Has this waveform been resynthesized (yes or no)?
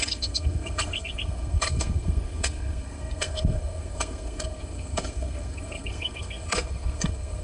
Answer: yes